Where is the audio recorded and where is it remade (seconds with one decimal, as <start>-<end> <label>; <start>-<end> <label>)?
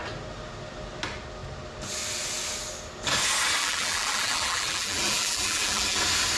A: 0.0-3.6 recorded; 3.6-6.0 remade; 6.0-6.4 recorded